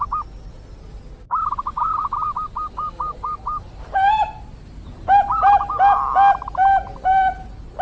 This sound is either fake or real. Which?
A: real